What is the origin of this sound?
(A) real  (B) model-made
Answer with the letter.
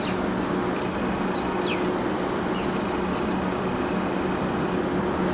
A